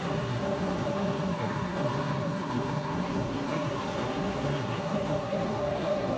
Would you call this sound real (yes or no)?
no